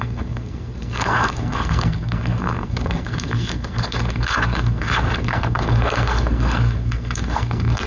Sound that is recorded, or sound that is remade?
remade